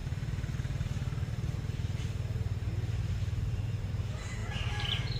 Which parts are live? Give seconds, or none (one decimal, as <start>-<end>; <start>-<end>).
0.0-5.2